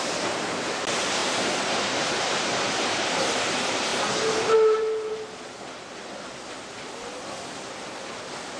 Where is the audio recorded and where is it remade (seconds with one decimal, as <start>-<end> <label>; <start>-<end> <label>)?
0.0-8.6 recorded